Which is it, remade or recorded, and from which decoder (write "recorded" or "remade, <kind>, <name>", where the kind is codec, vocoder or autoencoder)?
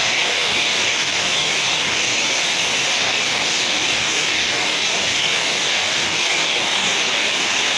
remade, codec, DAC